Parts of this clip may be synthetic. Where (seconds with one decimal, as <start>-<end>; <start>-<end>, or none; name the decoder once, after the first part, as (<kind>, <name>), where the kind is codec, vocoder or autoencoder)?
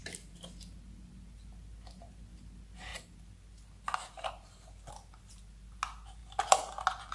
none